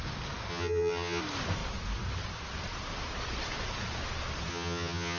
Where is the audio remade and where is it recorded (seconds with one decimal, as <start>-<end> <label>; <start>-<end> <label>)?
0.0-0.5 recorded; 0.5-1.2 remade; 1.2-4.5 recorded; 4.5-5.2 remade